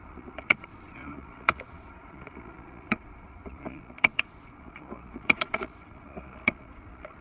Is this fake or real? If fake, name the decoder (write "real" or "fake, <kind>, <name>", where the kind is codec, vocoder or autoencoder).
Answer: fake, vocoder, Vocos